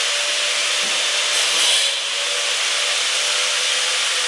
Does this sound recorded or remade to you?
recorded